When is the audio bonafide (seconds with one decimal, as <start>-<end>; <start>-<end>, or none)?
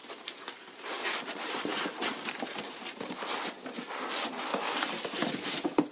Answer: 0.0-5.9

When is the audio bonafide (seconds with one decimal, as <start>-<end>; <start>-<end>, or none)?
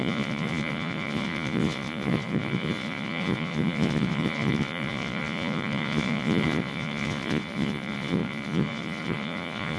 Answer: none